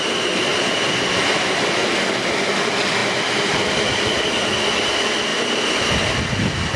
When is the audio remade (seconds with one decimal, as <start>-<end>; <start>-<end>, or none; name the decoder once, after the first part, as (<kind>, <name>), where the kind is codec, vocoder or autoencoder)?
0.5-1.2 (vocoder, BigVGAN v2); 3.0-3.7